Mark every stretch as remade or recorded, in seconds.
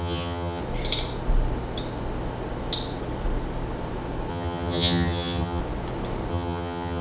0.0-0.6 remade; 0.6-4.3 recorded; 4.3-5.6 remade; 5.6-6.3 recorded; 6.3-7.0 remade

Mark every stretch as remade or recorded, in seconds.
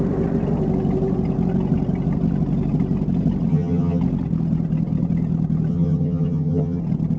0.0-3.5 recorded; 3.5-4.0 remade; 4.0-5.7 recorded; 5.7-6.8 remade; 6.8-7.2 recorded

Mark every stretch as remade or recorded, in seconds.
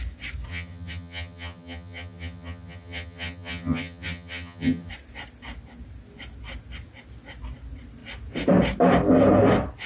0.0-0.5 recorded; 0.5-4.9 remade; 4.9-9.9 recorded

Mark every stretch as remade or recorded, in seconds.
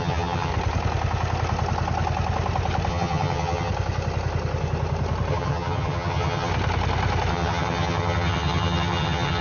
0.0-0.5 remade; 0.5-2.9 recorded; 2.9-3.7 remade; 3.7-5.3 recorded; 5.3-6.5 remade; 6.5-7.3 recorded; 7.3-9.4 remade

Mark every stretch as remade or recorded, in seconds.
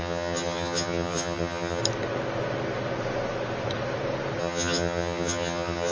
0.0-1.8 remade; 1.8-4.4 recorded; 4.4-5.9 remade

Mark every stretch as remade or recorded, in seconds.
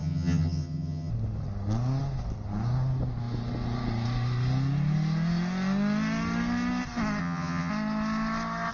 0.0-1.1 remade; 1.1-7.2 recorded; 7.2-7.7 remade; 7.7-8.7 recorded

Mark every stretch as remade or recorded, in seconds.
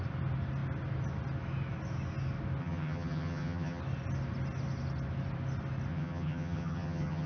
0.0-2.6 recorded; 2.6-3.8 remade; 3.8-5.9 recorded; 5.9-7.3 remade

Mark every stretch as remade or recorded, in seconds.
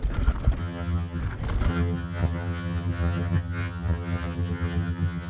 0.0-0.6 recorded; 0.6-1.2 remade; 1.2-1.7 recorded; 1.7-5.3 remade